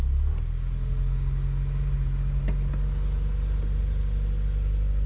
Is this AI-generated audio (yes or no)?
no